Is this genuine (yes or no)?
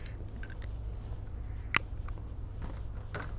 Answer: yes